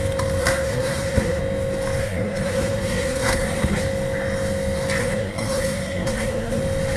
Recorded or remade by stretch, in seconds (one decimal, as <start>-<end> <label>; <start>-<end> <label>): 0.0-0.4 recorded; 0.4-1.4 remade; 1.4-2.0 recorded; 2.0-3.8 remade; 3.8-5.0 recorded; 5.0-6.6 remade; 6.6-7.0 recorded

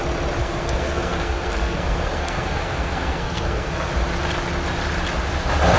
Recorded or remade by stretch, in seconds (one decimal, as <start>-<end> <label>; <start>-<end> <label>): 0.0-0.4 recorded; 0.4-3.9 remade; 3.9-5.8 recorded